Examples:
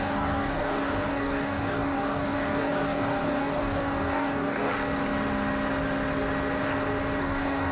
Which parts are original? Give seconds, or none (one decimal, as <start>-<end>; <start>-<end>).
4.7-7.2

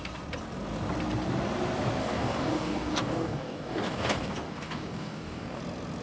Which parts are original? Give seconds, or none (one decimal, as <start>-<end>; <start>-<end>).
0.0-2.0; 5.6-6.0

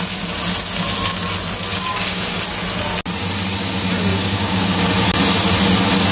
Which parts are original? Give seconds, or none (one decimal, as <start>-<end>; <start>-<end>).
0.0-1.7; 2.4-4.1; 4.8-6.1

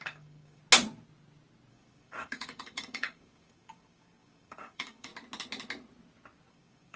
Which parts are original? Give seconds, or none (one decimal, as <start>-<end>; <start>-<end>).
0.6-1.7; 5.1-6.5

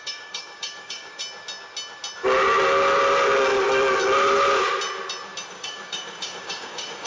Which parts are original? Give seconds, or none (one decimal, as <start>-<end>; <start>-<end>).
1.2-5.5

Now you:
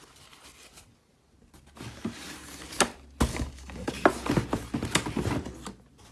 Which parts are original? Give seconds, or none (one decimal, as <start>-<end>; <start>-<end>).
0.0-3.3; 3.9-6.1

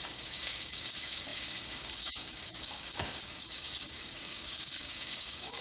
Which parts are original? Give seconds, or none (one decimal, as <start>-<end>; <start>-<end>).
none